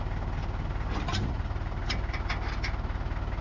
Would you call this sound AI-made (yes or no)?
no